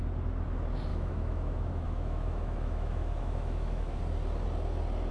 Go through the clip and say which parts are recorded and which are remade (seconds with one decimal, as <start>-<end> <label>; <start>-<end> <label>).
0.0-0.9 recorded; 0.9-4.0 remade; 4.0-5.1 recorded